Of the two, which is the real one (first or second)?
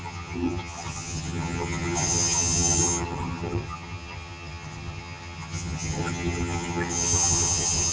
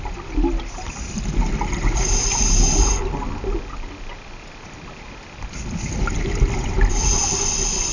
second